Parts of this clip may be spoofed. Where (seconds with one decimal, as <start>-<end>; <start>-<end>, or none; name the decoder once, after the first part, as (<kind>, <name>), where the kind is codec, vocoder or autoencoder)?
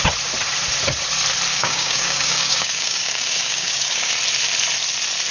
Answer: 1.5-4.1 (codec, DAC)